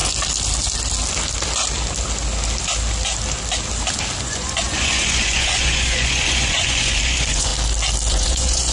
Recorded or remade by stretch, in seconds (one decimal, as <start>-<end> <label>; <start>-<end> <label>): 0.0-4.2 recorded; 4.2-7.5 remade; 7.5-8.1 recorded; 8.1-8.7 remade